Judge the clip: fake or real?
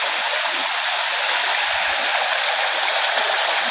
real